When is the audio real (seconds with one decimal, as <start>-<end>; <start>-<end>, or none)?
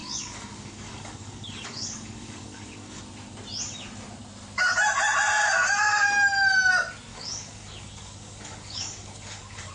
3.0-7.1